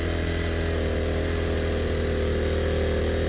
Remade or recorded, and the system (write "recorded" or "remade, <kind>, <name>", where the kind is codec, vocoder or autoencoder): recorded